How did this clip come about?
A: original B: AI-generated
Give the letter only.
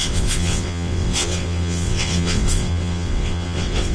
B